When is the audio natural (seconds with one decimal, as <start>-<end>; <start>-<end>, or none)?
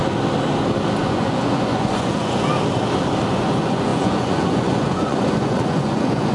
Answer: 0.0-1.0; 2.5-3.3